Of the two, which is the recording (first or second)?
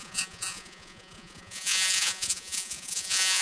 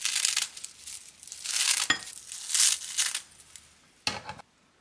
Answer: second